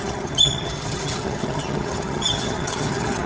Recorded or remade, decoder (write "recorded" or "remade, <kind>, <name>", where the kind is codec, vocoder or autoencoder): remade, vocoder, HiFi-GAN